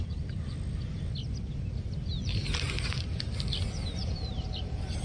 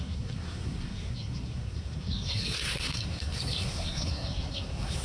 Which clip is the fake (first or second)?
second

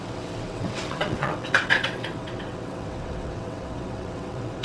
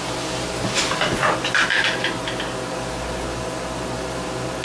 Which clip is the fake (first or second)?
first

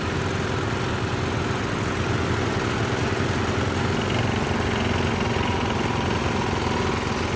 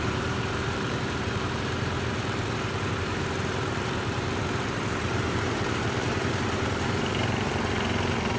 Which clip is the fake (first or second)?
second